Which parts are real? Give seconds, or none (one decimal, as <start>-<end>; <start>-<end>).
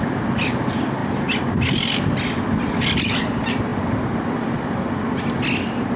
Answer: 0.0-6.0